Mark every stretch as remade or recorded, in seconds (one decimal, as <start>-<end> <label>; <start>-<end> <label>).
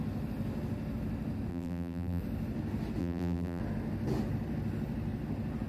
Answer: 0.0-1.5 recorded; 1.5-2.2 remade; 2.2-3.0 recorded; 3.0-3.6 remade; 3.6-5.7 recorded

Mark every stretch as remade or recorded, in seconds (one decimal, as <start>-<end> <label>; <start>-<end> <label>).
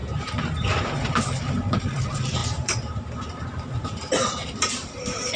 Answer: 0.0-1.7 recorded; 1.7-5.4 remade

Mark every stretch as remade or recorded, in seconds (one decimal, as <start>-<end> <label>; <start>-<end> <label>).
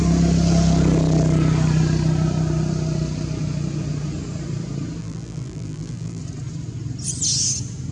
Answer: 0.0-5.0 recorded; 5.0-6.2 remade; 6.2-7.9 recorded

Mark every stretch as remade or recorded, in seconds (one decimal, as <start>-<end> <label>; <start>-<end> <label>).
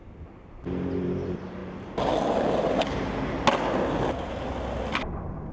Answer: 0.0-5.5 recorded